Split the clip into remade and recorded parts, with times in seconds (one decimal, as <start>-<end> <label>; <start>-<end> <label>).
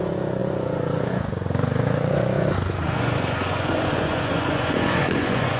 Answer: 0.0-5.6 remade